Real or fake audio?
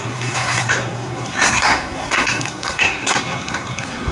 fake